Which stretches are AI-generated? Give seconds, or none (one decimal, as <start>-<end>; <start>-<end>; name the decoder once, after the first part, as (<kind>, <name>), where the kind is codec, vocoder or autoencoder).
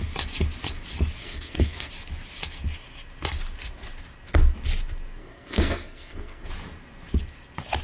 1.2-1.9 (codec, SNAC); 5.2-6.5